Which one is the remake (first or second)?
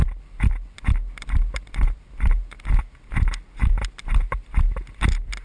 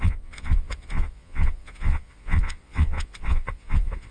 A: second